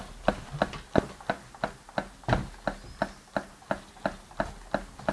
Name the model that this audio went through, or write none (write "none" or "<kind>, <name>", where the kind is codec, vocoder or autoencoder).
none